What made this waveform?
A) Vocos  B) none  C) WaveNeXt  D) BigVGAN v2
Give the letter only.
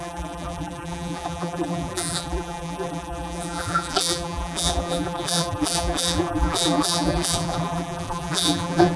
D